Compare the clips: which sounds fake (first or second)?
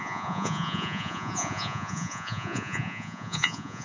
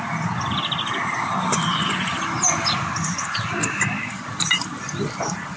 first